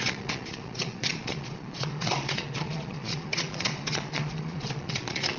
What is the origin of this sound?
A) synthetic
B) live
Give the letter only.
A